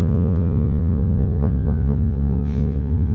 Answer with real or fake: fake